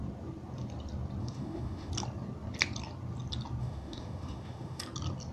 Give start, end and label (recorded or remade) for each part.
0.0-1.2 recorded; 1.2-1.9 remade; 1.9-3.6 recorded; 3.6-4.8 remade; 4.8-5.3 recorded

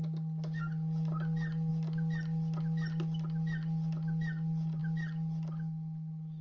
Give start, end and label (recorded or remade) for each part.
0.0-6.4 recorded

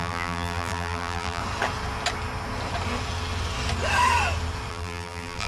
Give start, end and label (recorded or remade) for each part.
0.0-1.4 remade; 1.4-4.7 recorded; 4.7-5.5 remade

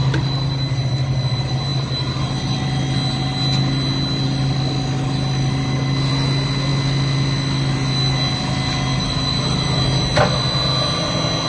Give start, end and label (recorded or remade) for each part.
0.0-11.5 recorded

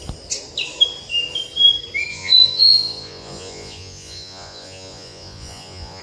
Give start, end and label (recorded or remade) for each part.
0.0-2.1 recorded; 2.1-6.0 remade